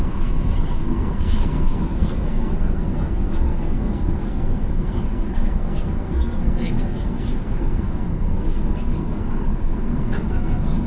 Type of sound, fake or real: fake